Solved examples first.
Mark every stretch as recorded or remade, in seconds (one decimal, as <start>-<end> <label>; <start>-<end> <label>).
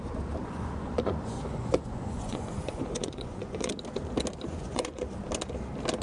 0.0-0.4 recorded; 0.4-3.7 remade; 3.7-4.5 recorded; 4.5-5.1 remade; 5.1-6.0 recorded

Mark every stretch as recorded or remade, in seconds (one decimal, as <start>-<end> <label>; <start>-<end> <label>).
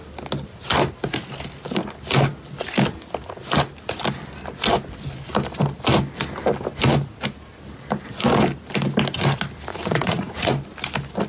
0.0-9.7 recorded; 9.7-10.5 remade; 10.5-11.3 recorded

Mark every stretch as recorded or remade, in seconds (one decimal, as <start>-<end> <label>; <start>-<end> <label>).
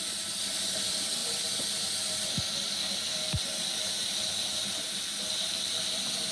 0.0-6.3 recorded